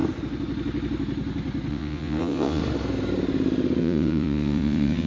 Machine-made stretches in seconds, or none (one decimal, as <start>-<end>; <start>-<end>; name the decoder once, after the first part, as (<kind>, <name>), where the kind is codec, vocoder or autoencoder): 1.7-2.6 (vocoder, WaveNeXt); 3.8-5.1